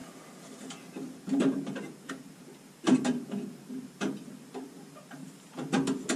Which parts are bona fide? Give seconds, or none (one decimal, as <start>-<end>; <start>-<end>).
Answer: 0.0-6.2